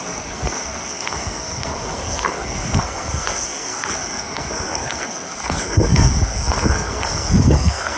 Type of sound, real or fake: fake